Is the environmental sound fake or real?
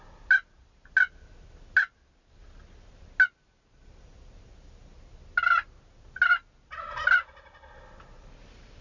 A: real